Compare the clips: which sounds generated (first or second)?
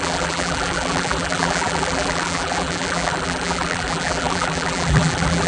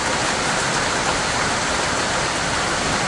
first